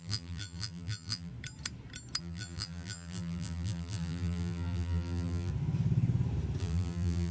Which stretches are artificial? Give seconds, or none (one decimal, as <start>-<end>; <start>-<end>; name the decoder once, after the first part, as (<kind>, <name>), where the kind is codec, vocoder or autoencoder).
0.0-1.3 (vocoder, BigVGAN v2); 2.2-5.5; 6.6-7.3